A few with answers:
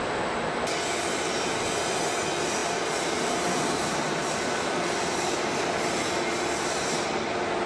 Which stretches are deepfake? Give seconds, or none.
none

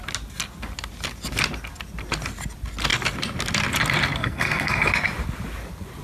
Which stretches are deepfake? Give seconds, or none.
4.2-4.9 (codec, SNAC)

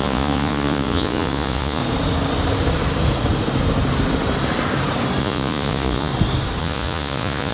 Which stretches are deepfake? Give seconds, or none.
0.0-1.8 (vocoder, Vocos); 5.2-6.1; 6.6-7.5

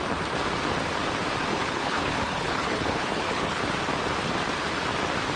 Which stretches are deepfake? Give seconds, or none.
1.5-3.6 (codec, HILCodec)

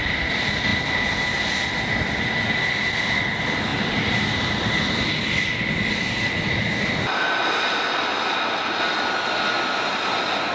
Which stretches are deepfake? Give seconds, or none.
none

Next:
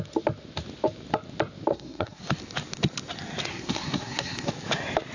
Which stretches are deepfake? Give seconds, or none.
1.7-2.2 (codec, SNAC); 3.5-4.5